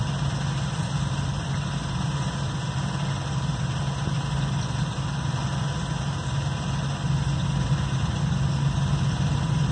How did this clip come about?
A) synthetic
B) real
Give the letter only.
B